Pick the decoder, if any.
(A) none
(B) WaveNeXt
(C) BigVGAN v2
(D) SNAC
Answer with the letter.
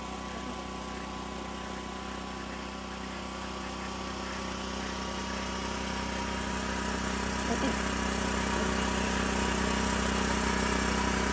A